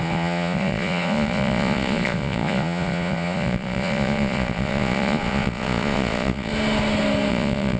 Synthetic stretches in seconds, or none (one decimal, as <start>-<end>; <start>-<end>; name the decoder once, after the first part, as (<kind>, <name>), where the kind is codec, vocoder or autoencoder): 0.0-6.5 (vocoder, Vocos); 7.3-7.8